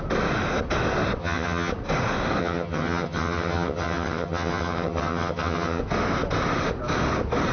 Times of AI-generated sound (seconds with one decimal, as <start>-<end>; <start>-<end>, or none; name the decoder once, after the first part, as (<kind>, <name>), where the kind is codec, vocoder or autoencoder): 1.2-1.7 (vocoder, HiFi-GAN); 2.4-5.8